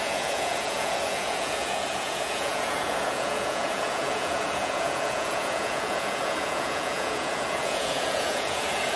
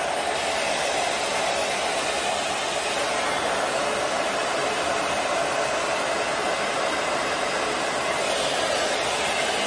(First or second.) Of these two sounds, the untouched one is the second